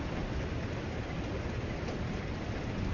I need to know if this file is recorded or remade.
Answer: recorded